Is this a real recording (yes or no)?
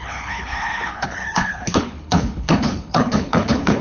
no